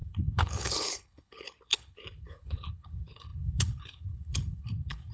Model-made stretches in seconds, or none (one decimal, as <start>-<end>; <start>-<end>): 0.0-5.1